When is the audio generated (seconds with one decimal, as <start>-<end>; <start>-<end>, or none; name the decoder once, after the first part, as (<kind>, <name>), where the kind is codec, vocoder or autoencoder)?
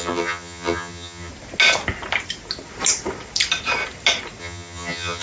0.0-1.3 (vocoder, HiFi-GAN); 4.4-5.2